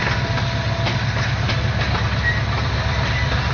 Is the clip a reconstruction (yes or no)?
no